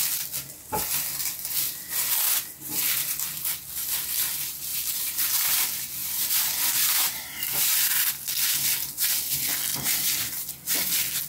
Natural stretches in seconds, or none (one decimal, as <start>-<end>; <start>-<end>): 0.0-4.7; 5.6-6.0; 8.1-9.7; 10.5-11.3